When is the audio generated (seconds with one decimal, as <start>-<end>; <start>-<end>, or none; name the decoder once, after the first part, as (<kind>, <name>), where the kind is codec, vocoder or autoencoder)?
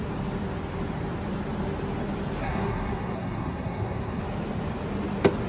2.4-4.2 (codec, SNAC)